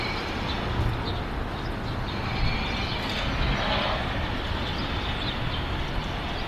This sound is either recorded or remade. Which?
recorded